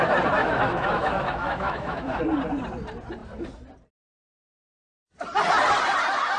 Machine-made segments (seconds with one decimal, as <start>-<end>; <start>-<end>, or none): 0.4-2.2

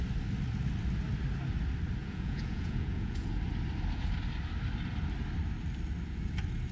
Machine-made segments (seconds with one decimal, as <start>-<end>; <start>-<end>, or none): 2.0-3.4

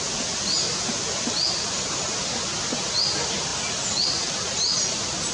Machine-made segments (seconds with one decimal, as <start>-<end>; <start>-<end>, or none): none

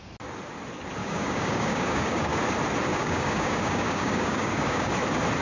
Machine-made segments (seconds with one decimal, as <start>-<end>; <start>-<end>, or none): 1.0-2.4; 2.9-4.9

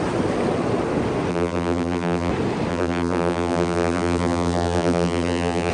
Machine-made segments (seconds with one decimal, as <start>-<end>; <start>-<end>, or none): 1.3-2.3; 2.7-5.7

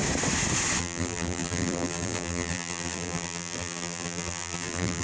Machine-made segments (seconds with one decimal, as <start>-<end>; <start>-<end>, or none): 0.8-5.0

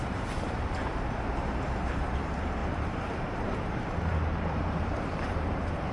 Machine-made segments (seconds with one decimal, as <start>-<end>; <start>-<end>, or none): 0.0-5.9